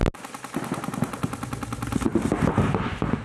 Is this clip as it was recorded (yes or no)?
yes